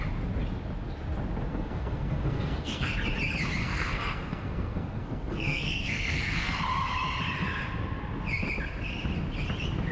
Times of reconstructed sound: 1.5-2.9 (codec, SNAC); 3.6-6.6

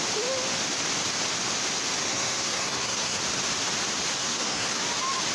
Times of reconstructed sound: 2.0-3.2 (codec, SNAC); 4.2-4.8